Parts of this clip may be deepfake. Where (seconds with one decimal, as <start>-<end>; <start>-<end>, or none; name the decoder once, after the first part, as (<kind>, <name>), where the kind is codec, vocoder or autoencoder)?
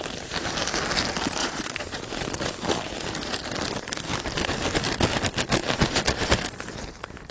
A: 1.4-3.1 (vocoder, Vocos); 5.6-6.3